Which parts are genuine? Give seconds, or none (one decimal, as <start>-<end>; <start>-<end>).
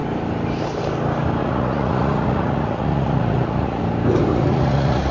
0.0-1.4; 3.8-4.3